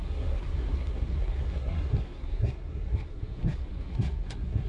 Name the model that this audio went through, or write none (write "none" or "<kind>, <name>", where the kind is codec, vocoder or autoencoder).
codec, SNAC